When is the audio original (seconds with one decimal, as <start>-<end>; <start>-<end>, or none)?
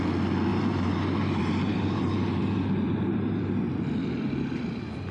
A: 0.0-0.5; 3.6-5.1